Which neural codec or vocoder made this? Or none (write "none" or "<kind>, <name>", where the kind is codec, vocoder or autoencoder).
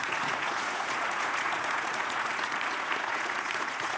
vocoder, Vocos